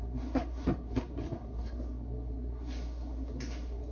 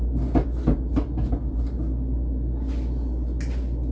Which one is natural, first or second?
second